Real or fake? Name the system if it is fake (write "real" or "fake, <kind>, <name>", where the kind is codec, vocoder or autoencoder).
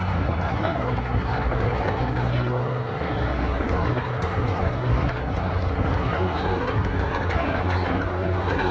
fake, codec, SNAC